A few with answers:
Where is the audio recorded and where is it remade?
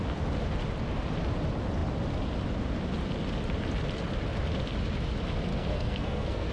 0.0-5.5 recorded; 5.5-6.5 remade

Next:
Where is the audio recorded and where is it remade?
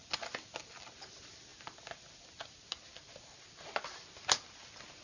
0.0-5.0 recorded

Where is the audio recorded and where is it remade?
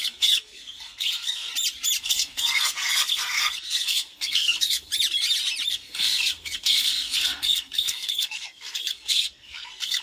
0.0-1.5 remade; 1.5-2.0 recorded; 2.0-4.9 remade; 4.9-5.7 recorded; 5.7-10.0 remade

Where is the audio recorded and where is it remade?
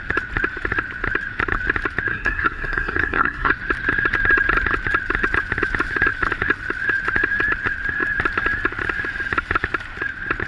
0.0-2.1 recorded; 2.1-3.5 remade; 3.5-10.5 recorded